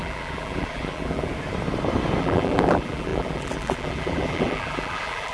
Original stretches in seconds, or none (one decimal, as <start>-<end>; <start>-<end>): 1.3-2.2